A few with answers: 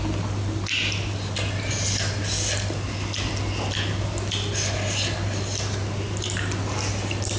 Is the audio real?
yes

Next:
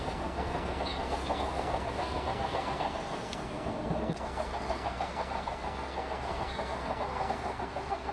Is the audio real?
no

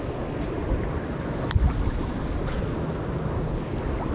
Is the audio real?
yes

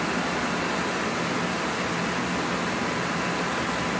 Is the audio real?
yes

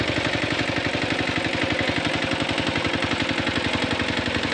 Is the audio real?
yes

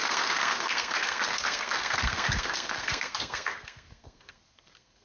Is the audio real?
no